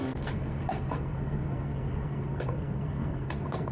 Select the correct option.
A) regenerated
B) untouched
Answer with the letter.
A